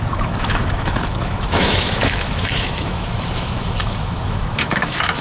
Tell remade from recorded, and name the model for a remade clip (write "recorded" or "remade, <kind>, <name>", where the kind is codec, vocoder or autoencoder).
remade, autoencoder, DAC-VAE